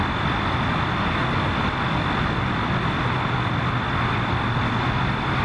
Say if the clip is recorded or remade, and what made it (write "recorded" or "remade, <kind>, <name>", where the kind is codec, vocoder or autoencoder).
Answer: recorded